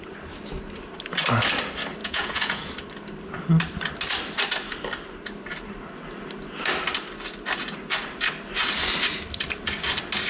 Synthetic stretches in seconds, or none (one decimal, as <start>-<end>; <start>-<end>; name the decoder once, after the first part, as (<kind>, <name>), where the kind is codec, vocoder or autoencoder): 2.0-2.7 (vocoder, Vocos)